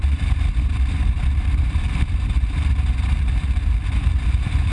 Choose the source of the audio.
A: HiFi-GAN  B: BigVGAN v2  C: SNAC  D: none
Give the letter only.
B